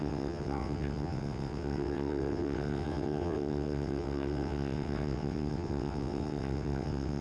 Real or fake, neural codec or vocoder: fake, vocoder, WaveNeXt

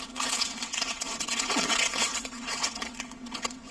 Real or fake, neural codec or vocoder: fake, vocoder, WaveNeXt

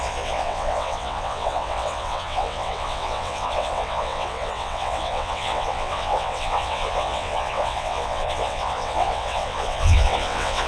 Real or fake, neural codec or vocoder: fake, vocoder, WaveNeXt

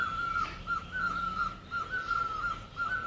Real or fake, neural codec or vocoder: real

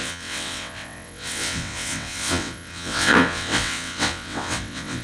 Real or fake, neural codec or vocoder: fake, vocoder, WaveNeXt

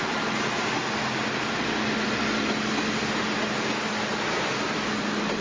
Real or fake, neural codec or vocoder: real